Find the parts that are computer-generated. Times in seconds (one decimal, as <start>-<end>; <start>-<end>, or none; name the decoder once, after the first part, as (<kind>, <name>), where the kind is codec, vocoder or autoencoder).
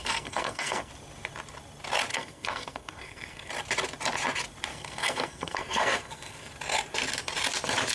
0.0-0.9 (codec, SNAC); 2.1-3.5; 4.7-6.5